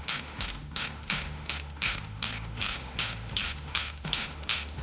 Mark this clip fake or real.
fake